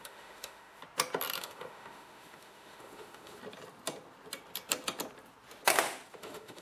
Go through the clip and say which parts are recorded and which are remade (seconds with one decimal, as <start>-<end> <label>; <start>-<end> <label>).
0.0-0.8 remade; 0.8-1.4 recorded; 1.4-3.4 remade; 3.4-6.1 recorded; 6.1-6.6 remade

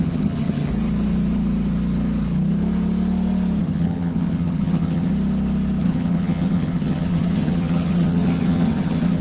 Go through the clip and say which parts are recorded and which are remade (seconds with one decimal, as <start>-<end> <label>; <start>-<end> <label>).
0.0-0.7 remade; 0.7-3.6 recorded; 3.6-5.1 remade; 5.1-5.8 recorded; 5.8-9.2 remade

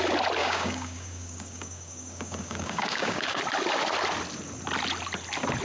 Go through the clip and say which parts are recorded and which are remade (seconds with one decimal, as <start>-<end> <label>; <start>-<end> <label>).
0.0-0.4 recorded; 0.4-3.4 remade; 3.4-5.6 recorded

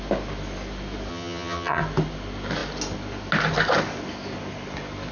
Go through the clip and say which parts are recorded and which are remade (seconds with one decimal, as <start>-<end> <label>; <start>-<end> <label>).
0.0-1.1 recorded; 1.1-1.8 remade; 1.8-5.1 recorded

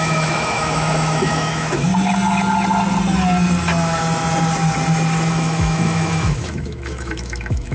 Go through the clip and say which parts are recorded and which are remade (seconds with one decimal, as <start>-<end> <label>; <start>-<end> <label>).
0.0-1.9 remade; 1.9-5.3 recorded; 5.3-7.7 remade